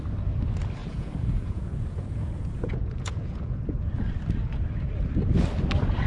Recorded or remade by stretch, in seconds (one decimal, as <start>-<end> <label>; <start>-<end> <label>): 0.0-0.8 recorded; 0.8-3.9 remade; 3.9-6.1 recorded